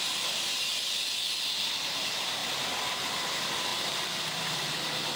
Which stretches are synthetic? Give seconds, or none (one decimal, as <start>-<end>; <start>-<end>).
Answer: 0.0-0.7; 1.8-2.4; 2.9-5.2